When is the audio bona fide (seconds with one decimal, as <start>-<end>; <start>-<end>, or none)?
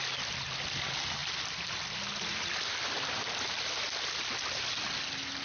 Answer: 0.0-5.4